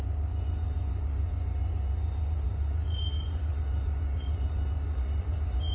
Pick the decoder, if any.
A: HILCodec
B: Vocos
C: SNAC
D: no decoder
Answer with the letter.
B